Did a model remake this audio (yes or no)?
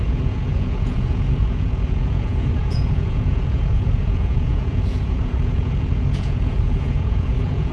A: yes